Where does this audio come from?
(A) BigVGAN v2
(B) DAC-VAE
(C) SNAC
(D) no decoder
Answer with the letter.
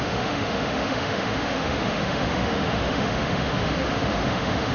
B